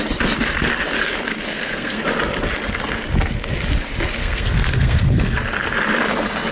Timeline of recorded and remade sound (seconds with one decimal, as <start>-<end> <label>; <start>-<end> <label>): 0.0-1.5 recorded; 1.5-2.0 remade; 2.0-4.2 recorded; 4.2-5.4 remade; 5.4-6.5 recorded